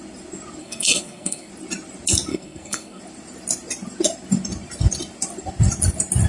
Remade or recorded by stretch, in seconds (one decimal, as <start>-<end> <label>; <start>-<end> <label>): 0.0-0.6 recorded; 0.6-1.5 remade; 1.5-2.3 recorded; 2.3-3.0 remade; 3.0-6.3 recorded